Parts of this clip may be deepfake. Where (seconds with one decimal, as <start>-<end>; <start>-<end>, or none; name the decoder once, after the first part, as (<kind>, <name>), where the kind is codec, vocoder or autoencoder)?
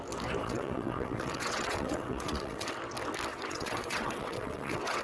0.4-2.7 (vocoder, WaveNeXt); 3.3-5.0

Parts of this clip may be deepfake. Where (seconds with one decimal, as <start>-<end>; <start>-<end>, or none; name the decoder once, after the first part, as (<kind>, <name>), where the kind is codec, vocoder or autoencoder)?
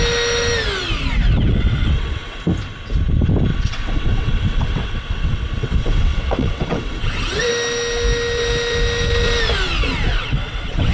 1.5-2.4 (vocoder, WaveNeXt); 3.5-7.5; 10.1-10.9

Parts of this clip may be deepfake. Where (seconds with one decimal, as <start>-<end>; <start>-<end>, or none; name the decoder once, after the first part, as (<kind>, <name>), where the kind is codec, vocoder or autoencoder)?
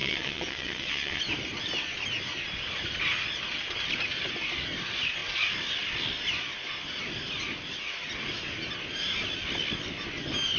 0.0-1.2 (vocoder, WaveNeXt)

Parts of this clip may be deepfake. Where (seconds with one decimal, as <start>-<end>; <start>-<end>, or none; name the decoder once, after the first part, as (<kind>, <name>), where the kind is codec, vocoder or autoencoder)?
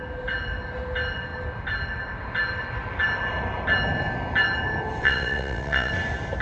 5.0-5.9 (vocoder, WaveNeXt)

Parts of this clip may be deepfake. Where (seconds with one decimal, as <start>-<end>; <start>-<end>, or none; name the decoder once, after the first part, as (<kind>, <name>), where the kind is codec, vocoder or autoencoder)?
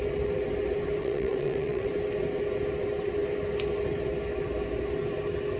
1.0-1.9 (vocoder, WaveNeXt)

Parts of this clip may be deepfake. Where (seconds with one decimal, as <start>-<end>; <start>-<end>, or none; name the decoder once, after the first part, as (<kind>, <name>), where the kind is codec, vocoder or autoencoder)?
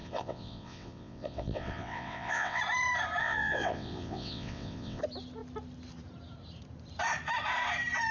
0.0-2.6 (vocoder, WaveNeXt); 3.2-5.0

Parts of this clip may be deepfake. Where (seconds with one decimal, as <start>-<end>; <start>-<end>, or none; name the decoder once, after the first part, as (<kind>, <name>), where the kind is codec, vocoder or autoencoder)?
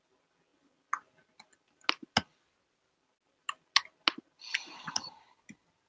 none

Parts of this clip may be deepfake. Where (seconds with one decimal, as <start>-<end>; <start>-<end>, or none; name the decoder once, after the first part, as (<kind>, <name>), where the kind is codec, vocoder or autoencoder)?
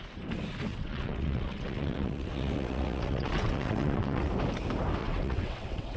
0.7-4.3 (vocoder, WaveNeXt); 5.0-6.0